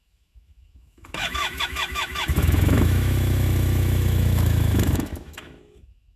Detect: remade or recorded remade